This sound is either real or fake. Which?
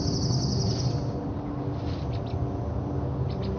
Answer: real